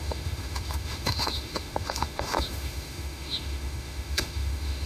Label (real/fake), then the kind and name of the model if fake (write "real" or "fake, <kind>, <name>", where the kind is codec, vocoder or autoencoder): fake, autoencoder, DAC-VAE